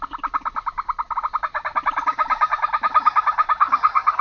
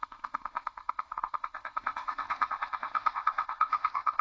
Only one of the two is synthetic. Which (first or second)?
second